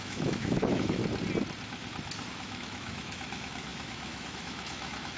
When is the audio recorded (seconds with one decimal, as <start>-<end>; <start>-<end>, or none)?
1.0-2.3